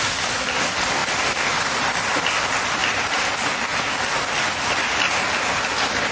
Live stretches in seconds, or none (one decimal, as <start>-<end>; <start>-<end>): 0.0-6.1